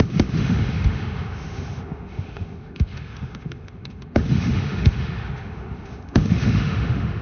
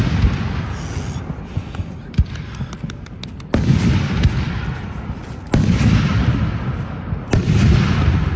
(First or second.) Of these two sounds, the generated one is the first